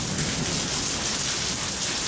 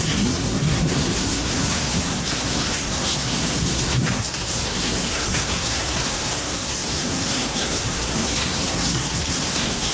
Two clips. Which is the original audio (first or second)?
first